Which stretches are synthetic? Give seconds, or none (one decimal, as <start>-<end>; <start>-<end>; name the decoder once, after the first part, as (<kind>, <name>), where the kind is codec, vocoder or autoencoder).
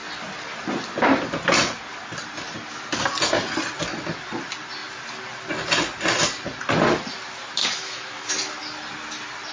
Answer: 7.6-8.3 (autoencoder, DAC-VAE)